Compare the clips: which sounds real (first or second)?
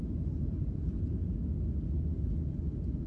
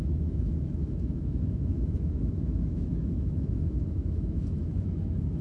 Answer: first